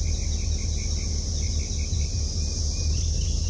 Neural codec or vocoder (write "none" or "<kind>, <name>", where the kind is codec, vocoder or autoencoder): none